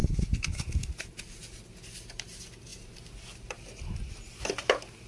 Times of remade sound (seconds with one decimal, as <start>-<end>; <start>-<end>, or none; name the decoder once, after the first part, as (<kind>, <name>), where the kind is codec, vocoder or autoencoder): 0.0-0.9 (codec, DAC)